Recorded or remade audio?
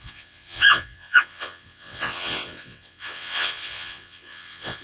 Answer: remade